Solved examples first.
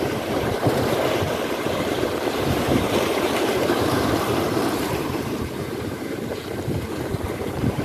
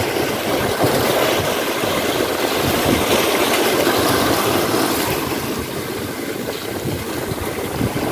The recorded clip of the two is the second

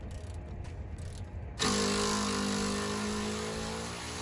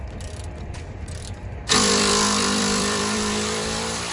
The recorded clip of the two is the first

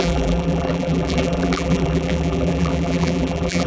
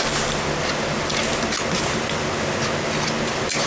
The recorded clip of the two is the second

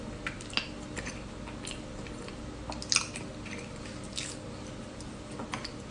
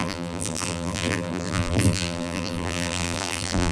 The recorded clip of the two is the first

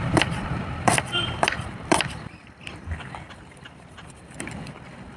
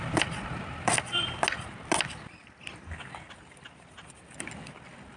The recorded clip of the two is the second